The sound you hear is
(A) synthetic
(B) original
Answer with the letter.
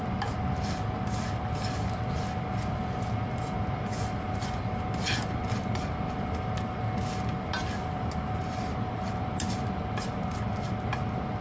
B